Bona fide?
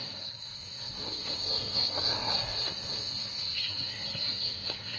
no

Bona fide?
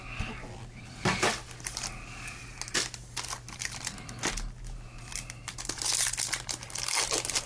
yes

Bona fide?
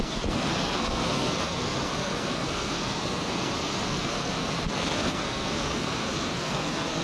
no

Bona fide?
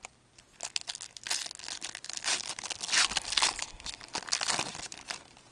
yes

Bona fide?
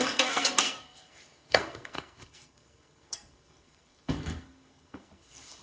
no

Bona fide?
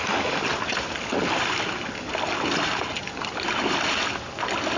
yes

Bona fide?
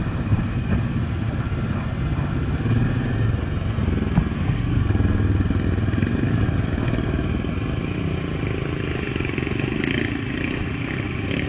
yes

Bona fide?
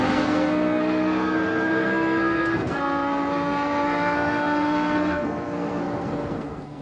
no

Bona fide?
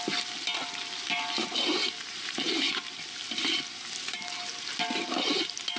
yes